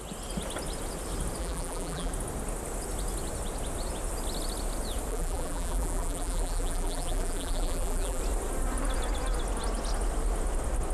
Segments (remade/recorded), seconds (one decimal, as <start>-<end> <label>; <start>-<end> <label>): 0.0-1.4 recorded; 1.4-2.1 remade; 2.1-5.1 recorded; 5.1-8.2 remade; 8.2-10.9 recorded